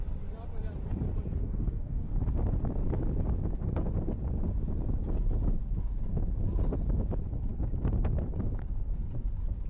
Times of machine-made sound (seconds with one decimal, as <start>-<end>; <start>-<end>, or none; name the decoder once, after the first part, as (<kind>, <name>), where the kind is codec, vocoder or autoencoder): 1.4-2.1 (codec, DAC)